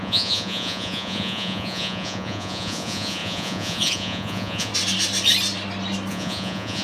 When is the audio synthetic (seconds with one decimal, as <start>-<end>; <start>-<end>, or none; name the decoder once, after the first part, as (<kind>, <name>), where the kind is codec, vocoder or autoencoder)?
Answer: 0.0-4.7 (vocoder, Vocos); 6.1-6.8